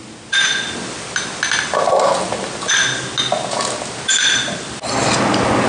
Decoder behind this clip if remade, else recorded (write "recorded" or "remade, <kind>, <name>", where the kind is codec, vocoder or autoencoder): recorded